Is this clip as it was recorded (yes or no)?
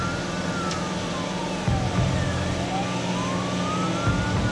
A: yes